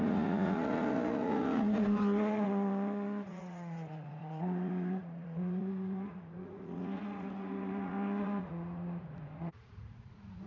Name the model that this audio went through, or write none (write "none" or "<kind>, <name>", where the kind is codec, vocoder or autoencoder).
vocoder, Vocos